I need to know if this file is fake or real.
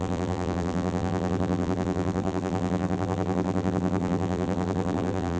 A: fake